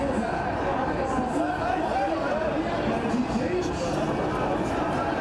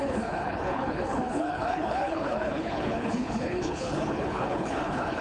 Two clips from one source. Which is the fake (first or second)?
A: second